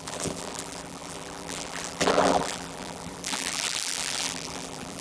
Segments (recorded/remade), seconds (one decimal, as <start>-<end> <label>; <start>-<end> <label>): 0.0-5.0 remade